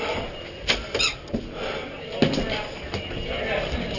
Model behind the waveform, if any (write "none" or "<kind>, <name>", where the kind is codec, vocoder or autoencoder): none